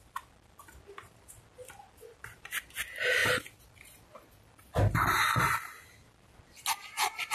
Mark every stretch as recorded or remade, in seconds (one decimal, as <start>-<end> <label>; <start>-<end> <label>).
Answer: 0.0-7.3 recorded